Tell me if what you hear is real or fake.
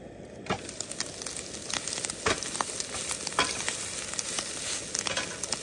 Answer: real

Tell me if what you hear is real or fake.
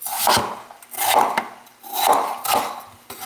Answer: real